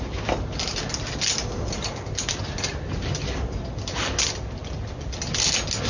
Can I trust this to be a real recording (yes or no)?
yes